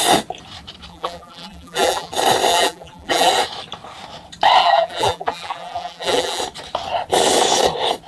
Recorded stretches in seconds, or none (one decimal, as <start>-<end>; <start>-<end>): 0.0-0.9; 2.1-2.5; 3.3-4.6; 6.4-8.1